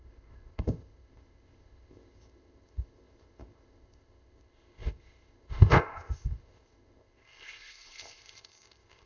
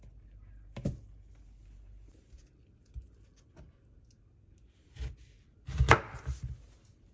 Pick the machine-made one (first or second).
first